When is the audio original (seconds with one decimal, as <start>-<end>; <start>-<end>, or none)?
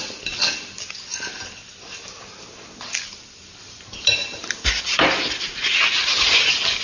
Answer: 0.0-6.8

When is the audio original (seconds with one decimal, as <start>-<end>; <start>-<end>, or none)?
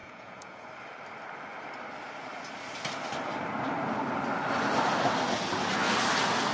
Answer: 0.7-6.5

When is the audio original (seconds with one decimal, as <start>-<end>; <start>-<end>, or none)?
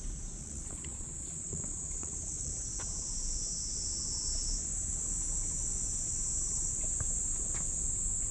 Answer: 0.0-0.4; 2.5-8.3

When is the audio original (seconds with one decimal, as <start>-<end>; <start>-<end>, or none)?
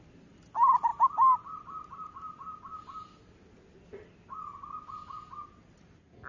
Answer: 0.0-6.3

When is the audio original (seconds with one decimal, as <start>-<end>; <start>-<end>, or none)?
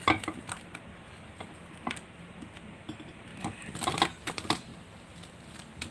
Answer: 0.0-5.9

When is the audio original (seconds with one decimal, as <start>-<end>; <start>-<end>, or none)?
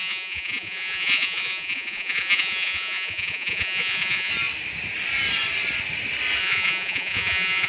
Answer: 4.3-6.4